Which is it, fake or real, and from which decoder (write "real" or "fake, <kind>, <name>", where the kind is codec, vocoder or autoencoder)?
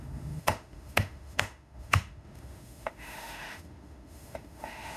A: fake, autoencoder, DAC-VAE